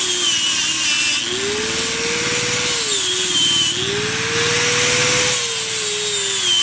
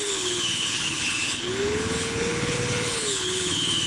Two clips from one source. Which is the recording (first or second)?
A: first